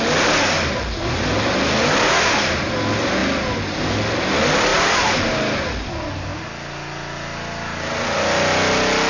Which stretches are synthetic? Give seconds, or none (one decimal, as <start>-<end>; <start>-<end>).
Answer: none